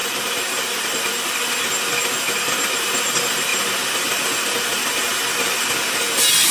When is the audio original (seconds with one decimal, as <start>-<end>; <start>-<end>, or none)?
0.0-6.5